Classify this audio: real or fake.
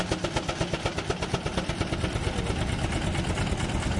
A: real